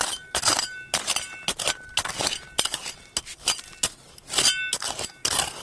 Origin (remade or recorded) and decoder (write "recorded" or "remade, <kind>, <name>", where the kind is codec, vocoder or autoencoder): recorded